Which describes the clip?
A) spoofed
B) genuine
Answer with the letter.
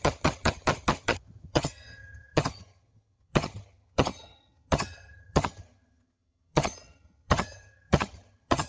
A